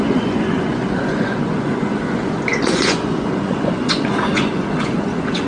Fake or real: fake